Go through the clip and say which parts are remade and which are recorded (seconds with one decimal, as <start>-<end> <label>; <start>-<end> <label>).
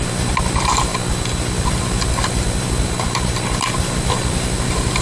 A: 0.0-5.0 recorded